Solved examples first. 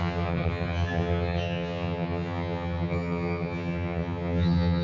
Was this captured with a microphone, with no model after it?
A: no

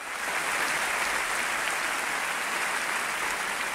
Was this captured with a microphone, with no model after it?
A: yes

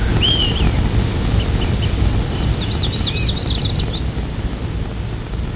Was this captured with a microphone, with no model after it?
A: yes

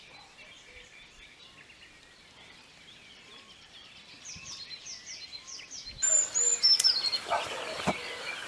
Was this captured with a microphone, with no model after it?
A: no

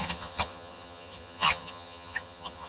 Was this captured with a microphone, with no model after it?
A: no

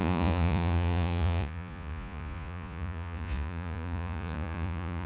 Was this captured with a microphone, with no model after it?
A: no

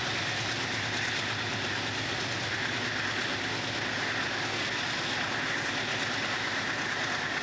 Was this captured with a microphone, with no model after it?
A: yes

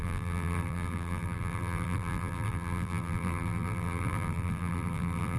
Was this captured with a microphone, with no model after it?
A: no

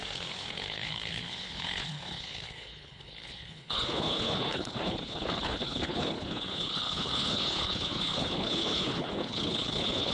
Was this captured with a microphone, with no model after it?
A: no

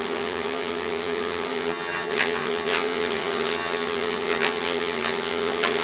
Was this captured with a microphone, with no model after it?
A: no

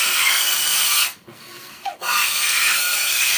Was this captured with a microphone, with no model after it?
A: no